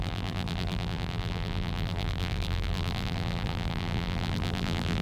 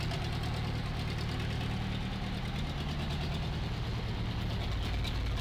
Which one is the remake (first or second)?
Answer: first